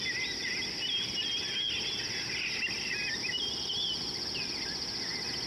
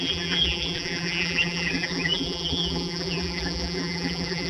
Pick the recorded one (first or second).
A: first